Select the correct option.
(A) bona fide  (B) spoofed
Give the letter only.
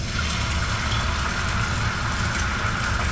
A